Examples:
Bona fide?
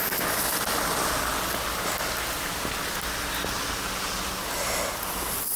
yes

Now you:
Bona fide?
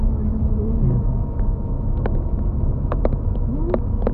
no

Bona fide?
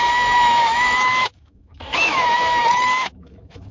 no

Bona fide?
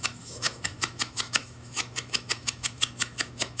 no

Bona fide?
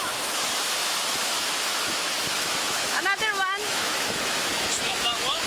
no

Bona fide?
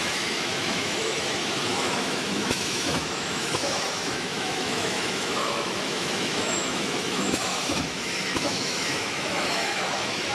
no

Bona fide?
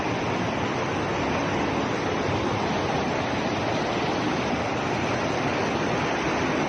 yes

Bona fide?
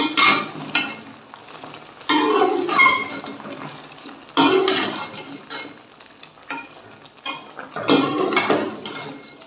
yes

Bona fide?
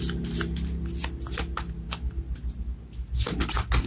yes